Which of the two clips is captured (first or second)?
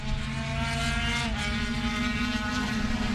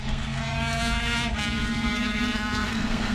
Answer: first